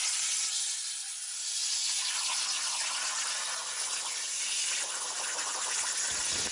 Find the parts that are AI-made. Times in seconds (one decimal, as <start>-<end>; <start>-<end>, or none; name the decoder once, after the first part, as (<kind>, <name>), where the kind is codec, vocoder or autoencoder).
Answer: none